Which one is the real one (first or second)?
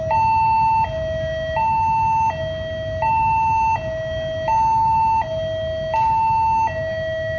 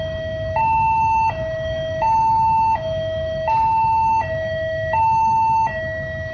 first